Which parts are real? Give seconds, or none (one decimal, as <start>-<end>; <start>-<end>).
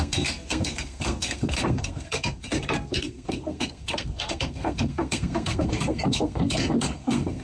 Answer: none